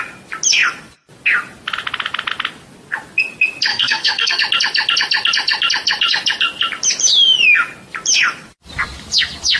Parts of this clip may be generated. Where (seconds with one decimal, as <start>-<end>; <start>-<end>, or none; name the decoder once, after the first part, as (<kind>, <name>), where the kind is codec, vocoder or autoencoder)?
3.7-4.4 (codec, SNAC)